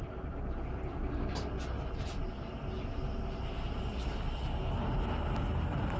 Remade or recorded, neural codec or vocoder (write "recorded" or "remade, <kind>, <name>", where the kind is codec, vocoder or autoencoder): recorded